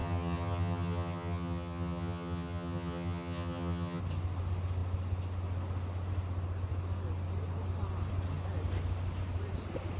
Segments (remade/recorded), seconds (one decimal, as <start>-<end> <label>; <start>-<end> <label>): 0.0-4.0 remade; 4.0-10.0 recorded